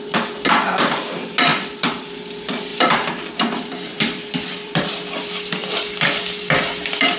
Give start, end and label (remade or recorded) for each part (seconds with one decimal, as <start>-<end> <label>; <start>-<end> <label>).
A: 0.0-1.5 recorded; 1.5-2.1 remade; 2.1-3.9 recorded; 3.9-5.7 remade; 5.7-7.2 recorded